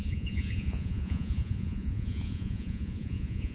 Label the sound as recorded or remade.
remade